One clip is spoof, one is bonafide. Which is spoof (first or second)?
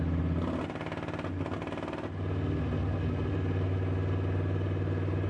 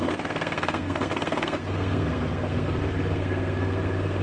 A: second